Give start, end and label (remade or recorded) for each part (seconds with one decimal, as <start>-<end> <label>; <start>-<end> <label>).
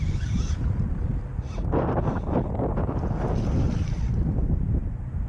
0.0-5.3 recorded